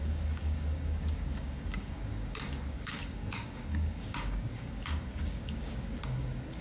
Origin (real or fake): fake